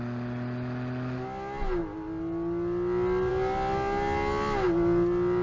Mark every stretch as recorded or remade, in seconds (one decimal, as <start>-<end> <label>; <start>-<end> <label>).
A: 0.0-5.4 recorded